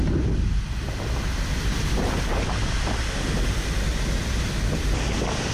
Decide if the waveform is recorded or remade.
recorded